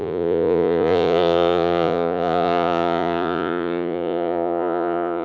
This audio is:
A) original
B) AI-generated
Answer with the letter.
B